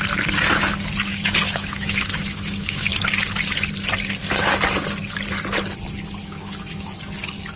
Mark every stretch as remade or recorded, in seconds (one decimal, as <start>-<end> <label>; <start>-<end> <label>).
0.0-1.1 recorded; 1.1-3.0 remade; 3.0-6.2 recorded; 6.2-6.9 remade; 6.9-7.6 recorded